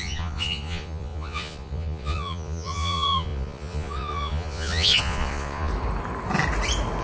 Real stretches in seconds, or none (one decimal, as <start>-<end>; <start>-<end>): 5.7-7.0